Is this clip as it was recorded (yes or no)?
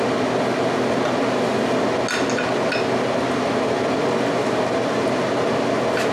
yes